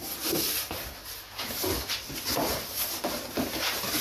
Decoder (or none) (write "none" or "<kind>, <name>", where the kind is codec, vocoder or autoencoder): none